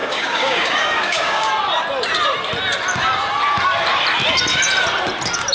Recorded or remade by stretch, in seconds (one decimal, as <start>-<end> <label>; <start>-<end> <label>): 0.0-1.5 remade; 1.5-5.5 recorded